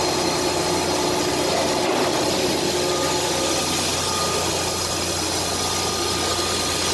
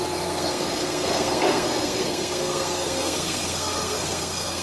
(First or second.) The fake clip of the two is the second